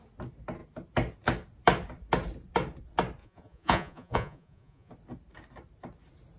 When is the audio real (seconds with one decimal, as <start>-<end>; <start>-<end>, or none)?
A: 0.0-3.2; 4.9-6.4